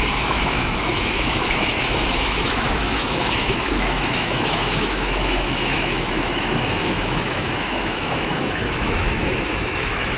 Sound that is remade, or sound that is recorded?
remade